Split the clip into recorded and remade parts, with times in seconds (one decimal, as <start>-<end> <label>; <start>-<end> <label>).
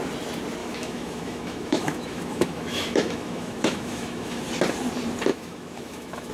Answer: 0.0-0.6 recorded; 0.6-4.4 remade; 4.4-5.3 recorded; 5.3-6.3 remade